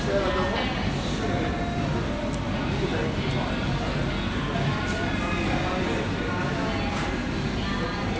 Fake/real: real